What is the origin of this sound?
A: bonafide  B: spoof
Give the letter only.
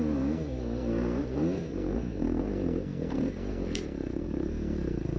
B